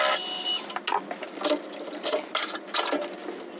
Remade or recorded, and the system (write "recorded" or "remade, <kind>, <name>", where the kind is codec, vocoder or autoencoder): recorded